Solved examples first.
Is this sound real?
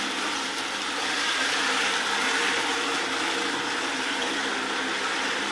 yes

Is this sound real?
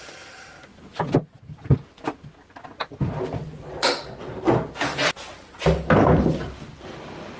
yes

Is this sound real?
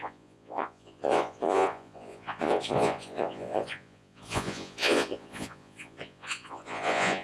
no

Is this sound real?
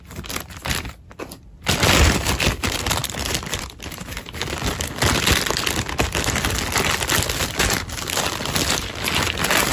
yes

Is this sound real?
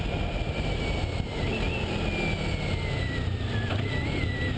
yes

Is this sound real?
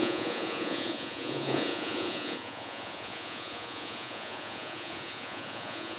no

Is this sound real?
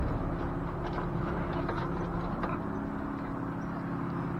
yes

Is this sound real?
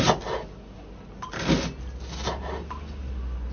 yes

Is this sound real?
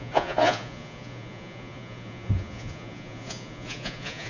no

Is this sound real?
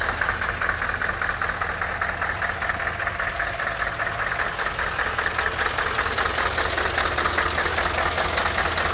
yes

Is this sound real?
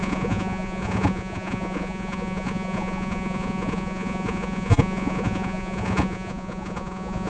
no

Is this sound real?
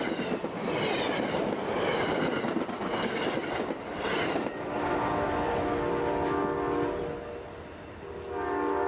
yes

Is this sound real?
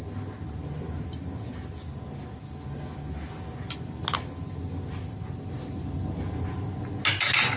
yes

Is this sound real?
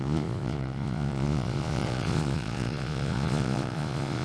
no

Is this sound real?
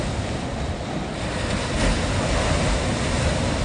yes